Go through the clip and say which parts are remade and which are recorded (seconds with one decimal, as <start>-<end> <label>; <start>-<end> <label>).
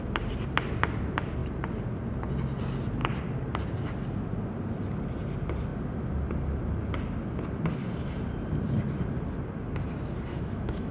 0.0-10.3 recorded; 10.3-10.9 remade